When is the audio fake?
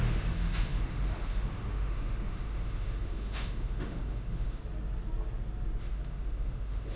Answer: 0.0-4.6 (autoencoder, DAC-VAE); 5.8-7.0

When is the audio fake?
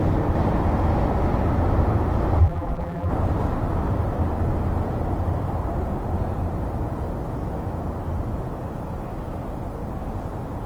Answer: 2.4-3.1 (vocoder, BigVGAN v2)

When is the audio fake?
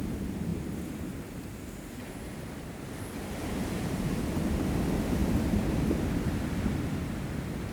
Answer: 5.2-7.7 (vocoder, BigVGAN v2)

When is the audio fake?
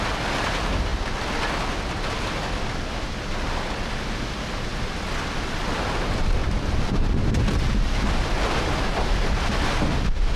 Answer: none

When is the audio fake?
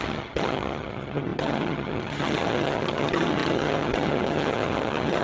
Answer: 0.0-5.2 (vocoder, HiFi-GAN)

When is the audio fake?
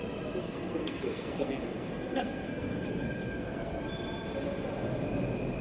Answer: 0.4-3.8 (codec, SNAC)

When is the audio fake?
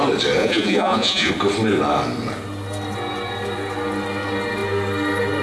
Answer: 0.4-1.3 (vocoder, Vocos)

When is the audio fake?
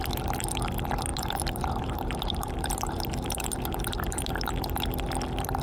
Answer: 1.1-4.5 (vocoder, BigVGAN v2)